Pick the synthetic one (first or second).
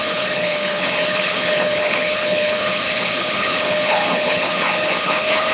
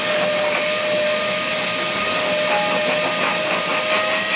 first